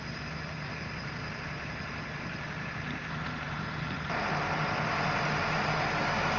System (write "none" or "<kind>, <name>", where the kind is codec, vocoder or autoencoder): vocoder, BigVGAN v2